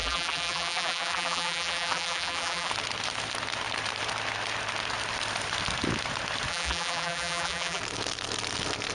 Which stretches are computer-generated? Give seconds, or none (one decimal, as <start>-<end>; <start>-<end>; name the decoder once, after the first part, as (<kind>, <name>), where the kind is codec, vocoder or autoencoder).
0.0-2.7 (vocoder, BigVGAN v2); 6.5-7.8